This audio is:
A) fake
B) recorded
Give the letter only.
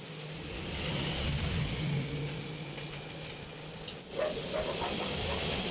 B